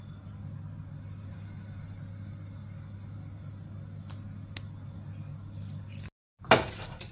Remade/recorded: recorded